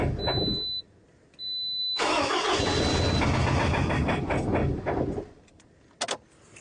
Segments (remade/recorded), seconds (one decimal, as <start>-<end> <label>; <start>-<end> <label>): 0.0-1.8 recorded; 1.8-2.4 remade; 2.4-6.6 recorded